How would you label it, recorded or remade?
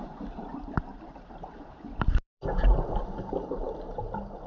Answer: remade